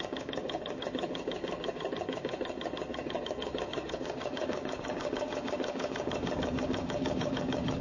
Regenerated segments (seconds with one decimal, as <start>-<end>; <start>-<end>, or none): 0.0-7.8